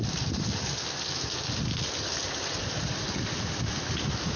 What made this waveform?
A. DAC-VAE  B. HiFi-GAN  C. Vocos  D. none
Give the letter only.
D